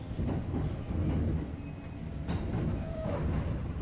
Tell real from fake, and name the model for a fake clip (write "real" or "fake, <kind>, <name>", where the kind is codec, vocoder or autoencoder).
real